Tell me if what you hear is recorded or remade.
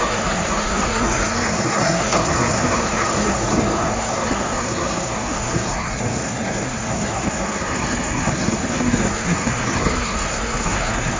remade